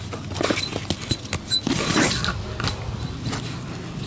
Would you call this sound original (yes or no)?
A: yes